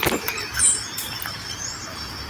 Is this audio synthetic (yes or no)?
no